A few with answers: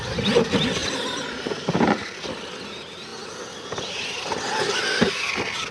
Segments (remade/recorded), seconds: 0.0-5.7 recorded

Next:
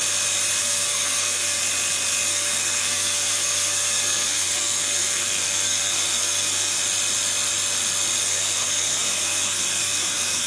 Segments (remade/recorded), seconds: 0.0-0.6 recorded; 0.6-1.6 remade; 1.6-2.3 recorded; 2.3-6.8 remade; 6.8-8.2 recorded; 8.2-10.5 remade

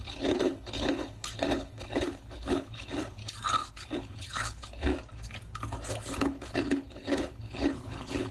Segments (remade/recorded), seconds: 0.0-3.2 remade; 3.2-3.7 recorded; 3.7-4.9 remade; 4.9-5.9 recorded; 5.9-8.3 remade